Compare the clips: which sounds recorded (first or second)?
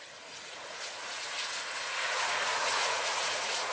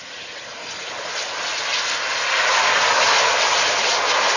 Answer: second